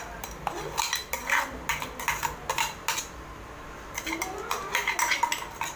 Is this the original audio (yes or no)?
yes